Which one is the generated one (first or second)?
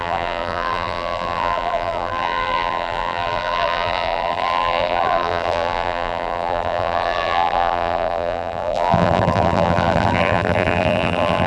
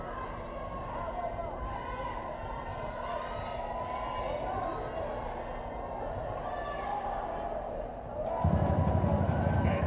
first